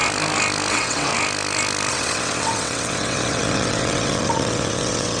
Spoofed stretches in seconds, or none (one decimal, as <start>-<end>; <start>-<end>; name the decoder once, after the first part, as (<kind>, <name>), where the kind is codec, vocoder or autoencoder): 0.7-1.1 (vocoder, WaveNeXt); 1.9-5.2